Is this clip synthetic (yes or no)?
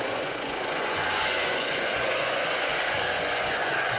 yes